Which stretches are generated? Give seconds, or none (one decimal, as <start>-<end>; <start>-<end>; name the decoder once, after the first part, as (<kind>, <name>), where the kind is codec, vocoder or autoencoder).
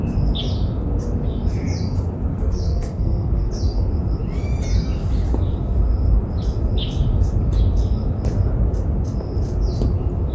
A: 2.3-3.5 (codec, SNAC)